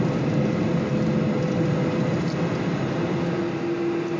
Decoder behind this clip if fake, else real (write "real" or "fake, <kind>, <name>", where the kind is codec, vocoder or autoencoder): real